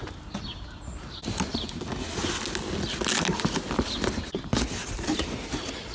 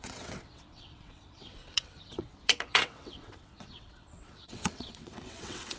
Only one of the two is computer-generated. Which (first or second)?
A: second